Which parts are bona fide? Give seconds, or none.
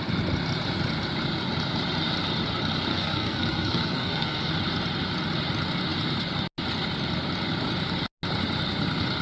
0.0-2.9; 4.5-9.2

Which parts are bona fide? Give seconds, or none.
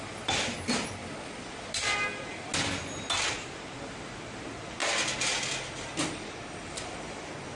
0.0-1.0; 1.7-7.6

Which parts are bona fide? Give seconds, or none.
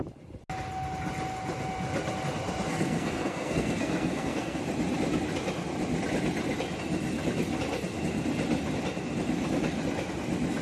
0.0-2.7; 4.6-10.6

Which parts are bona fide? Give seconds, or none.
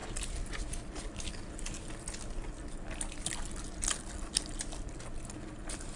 0.0-6.0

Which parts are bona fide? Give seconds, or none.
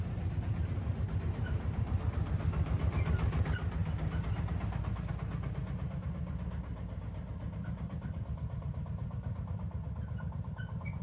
0.0-11.0